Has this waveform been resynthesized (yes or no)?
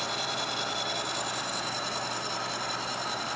no